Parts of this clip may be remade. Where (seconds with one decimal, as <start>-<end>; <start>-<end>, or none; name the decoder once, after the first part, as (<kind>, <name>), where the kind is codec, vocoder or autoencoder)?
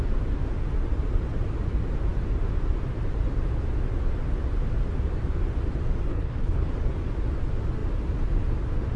6.1-6.7 (codec, HILCodec)